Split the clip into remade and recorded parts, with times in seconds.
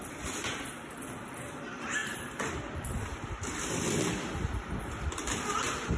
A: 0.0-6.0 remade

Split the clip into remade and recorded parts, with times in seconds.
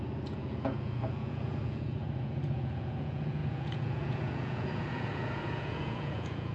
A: 0.0-6.5 remade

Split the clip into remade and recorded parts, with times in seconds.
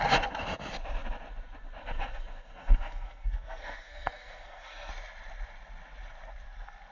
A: 0.0-1.8 recorded; 1.8-4.9 remade; 4.9-6.9 recorded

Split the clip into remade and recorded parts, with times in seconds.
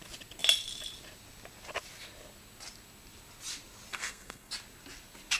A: 0.0-3.9 recorded; 3.9-4.5 remade; 4.5-5.4 recorded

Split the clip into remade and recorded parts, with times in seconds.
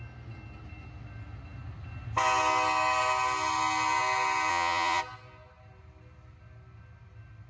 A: 0.0-4.5 recorded; 4.5-5.0 remade; 5.0-7.5 recorded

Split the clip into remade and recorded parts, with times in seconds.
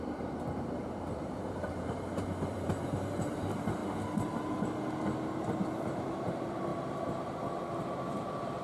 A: 0.0-3.8 remade; 3.8-5.7 recorded; 5.7-6.7 remade; 6.7-7.7 recorded; 7.7-8.6 remade